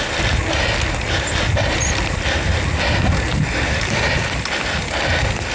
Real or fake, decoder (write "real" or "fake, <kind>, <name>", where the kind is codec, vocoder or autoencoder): real